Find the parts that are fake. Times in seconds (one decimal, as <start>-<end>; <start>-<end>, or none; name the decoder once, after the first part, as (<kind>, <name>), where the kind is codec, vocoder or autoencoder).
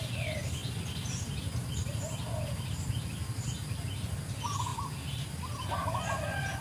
none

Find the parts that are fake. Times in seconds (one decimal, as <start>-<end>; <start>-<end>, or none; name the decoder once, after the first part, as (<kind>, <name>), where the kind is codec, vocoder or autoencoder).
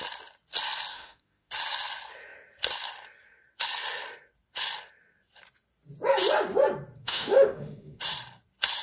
0.9-1.5 (autoencoder, DAC-VAE); 7.0-8.0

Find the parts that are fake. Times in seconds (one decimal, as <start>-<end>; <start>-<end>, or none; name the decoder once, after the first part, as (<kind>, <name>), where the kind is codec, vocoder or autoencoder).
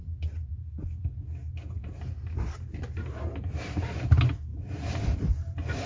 4.5-5.9 (vocoder, BigVGAN v2)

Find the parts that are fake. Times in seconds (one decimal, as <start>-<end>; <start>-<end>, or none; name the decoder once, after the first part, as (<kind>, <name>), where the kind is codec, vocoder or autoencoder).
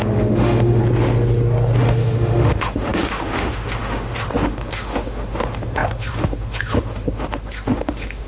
0.0-0.8 (autoencoder, DAC-VAE); 1.8-8.3